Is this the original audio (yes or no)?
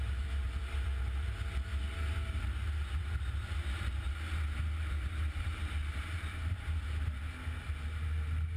yes